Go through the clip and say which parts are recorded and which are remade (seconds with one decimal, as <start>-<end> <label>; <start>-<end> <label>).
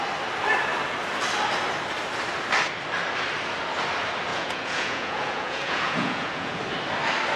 0.0-4.3 recorded; 4.3-6.6 remade; 6.6-7.4 recorded